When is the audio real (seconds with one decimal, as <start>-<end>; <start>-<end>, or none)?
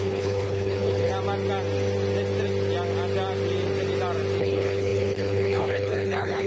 1.1-4.4